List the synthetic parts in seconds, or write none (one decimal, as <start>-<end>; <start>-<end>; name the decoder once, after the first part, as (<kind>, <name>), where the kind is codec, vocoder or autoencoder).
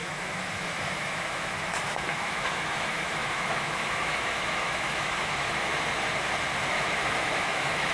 0.0-5.7 (autoencoder, DAC-VAE); 6.7-7.9